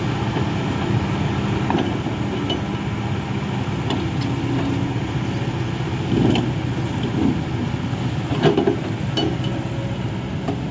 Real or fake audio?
real